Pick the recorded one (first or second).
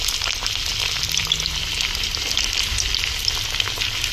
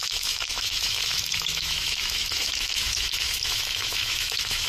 first